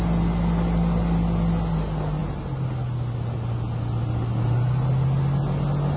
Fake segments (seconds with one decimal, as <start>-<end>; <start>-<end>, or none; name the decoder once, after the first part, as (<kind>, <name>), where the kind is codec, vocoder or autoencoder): none